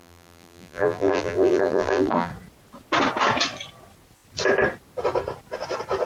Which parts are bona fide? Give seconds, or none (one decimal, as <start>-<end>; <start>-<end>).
2.3-6.1